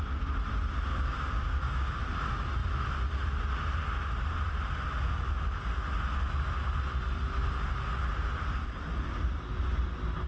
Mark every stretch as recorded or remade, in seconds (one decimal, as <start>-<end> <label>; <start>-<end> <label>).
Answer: 0.0-0.9 recorded; 0.9-2.0 remade; 2.0-10.3 recorded

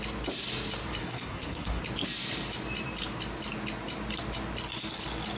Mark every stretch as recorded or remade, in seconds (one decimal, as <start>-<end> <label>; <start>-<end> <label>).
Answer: 0.0-1.0 recorded; 1.0-1.8 remade; 1.8-5.4 recorded